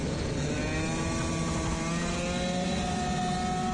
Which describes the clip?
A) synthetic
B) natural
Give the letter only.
B